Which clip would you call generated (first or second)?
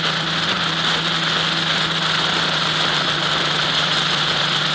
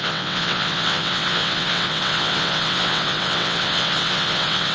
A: second